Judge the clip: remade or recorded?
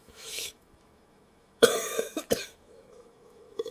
remade